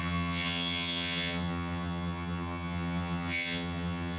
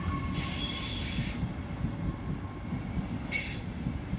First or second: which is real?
second